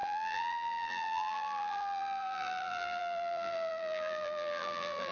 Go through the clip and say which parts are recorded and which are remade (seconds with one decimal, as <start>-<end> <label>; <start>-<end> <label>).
0.0-5.1 remade